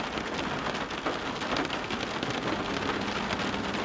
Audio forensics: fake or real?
real